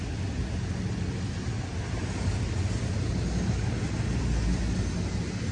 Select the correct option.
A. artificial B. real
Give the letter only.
B